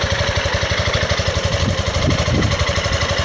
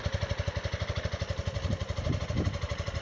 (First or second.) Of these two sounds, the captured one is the second